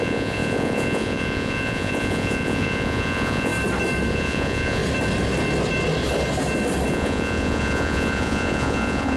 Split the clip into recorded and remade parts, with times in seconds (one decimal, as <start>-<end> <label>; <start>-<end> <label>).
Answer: 0.0-3.5 remade; 3.5-4.1 recorded; 4.1-4.8 remade; 4.8-6.9 recorded; 6.9-9.2 remade